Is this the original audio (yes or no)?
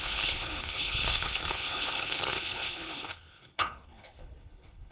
no